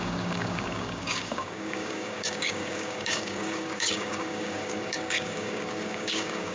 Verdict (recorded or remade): remade